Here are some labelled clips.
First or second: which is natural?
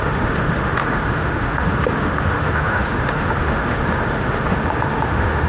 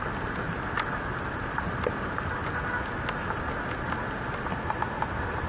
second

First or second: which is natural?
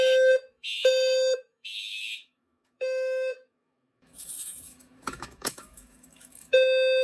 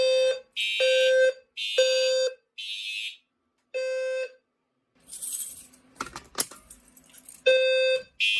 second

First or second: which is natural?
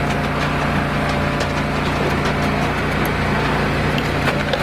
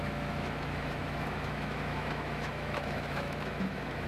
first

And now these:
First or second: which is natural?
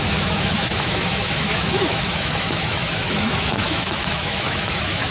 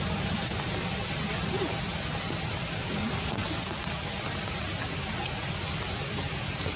second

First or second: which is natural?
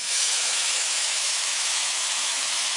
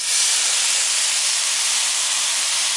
second